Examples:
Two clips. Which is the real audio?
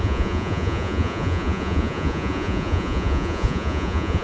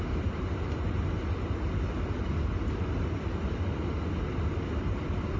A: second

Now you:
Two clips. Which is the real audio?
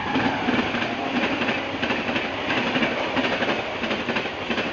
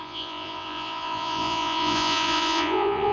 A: first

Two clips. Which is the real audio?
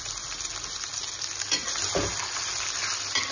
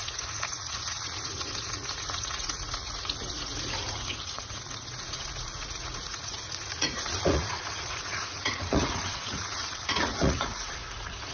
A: first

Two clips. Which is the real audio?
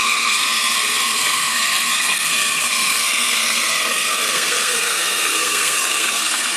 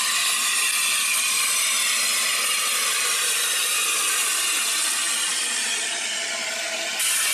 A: second